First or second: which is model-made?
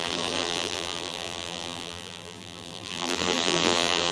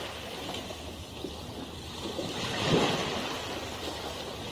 first